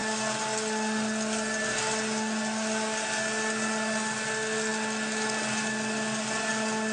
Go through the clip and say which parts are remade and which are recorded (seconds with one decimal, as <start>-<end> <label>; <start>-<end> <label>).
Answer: 0.0-6.9 recorded